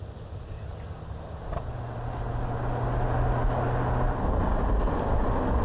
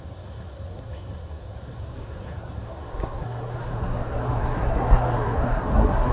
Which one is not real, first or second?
second